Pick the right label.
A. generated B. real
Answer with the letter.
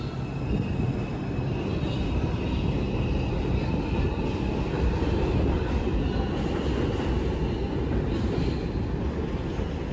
B